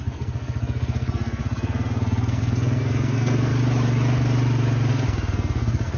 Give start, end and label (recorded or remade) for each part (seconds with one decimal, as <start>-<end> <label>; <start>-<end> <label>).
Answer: 0.0-3.5 remade; 3.5-4.9 recorded; 4.9-6.0 remade